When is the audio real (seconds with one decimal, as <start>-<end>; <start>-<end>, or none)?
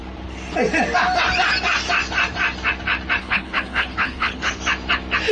0.0-3.2; 4.6-5.3